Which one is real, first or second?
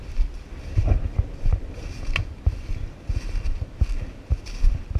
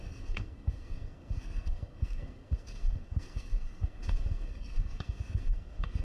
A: first